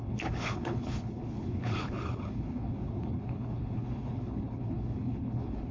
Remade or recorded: remade